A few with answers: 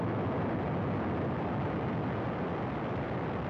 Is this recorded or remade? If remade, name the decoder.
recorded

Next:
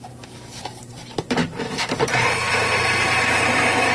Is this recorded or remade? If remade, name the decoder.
remade, vocoder, BigVGAN v2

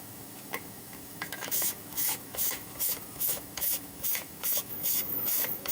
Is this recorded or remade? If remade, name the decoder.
remade, autoencoder, DAC-VAE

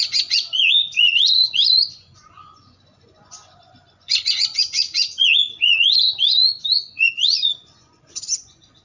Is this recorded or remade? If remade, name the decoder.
remade, vocoder, Vocos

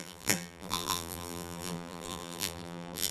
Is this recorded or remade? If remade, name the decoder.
remade, vocoder, BigVGAN v2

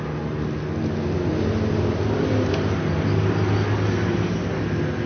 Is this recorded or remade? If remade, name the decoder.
recorded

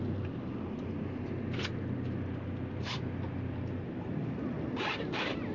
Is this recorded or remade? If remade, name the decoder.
recorded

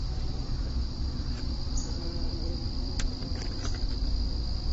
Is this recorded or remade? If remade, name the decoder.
recorded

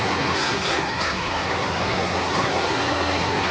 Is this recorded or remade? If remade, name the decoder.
remade, codec, SNAC